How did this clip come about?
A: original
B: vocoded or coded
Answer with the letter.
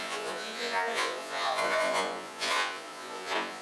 B